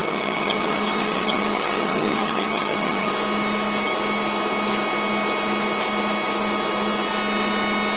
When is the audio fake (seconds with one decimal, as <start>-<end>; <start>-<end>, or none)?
0.0-3.1

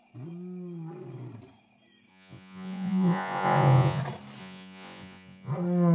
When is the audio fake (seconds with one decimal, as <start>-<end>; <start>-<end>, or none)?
2.1-4.0; 4.4-5.5